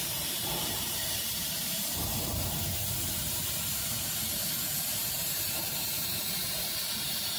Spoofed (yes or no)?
yes